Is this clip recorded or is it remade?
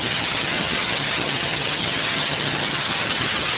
remade